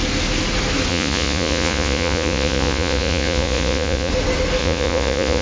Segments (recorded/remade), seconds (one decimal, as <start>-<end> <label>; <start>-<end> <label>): 0.0-0.9 recorded; 0.9-4.1 remade; 4.1-4.6 recorded; 4.6-5.4 remade